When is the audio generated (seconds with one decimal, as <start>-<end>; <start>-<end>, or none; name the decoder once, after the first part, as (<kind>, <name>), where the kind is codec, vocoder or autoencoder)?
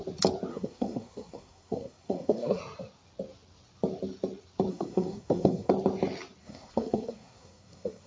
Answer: 0.5-2.6 (codec, SNAC); 4.7-5.7; 6.4-8.1